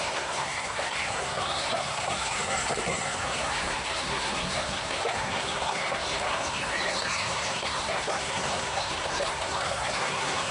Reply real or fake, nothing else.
fake